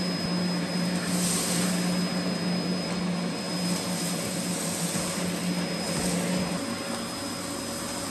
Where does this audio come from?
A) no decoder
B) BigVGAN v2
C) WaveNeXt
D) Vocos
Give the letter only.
A